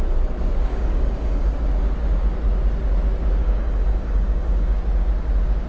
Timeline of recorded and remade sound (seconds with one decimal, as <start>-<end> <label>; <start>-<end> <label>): 0.0-0.7 recorded; 0.7-1.5 remade; 1.5-3.4 recorded; 3.4-4.8 remade; 4.8-5.7 recorded